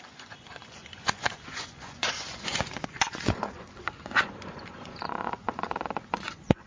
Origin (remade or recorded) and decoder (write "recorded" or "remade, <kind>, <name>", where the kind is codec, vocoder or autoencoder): remade, vocoder, Vocos